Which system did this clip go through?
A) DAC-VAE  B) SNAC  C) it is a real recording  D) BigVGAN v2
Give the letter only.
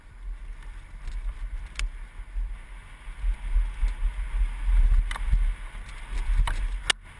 C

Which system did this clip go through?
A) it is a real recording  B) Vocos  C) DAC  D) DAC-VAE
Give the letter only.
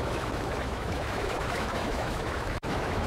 D